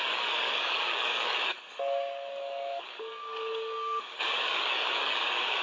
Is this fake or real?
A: fake